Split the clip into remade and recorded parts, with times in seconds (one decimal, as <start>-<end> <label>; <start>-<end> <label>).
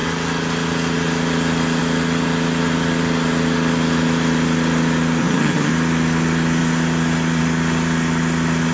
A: 0.0-5.2 recorded; 5.2-5.7 remade; 5.7-8.7 recorded